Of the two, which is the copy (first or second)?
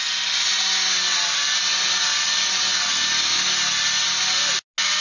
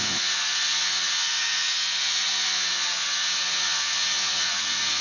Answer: second